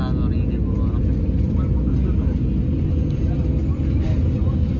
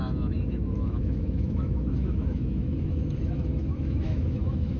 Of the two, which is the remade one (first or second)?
second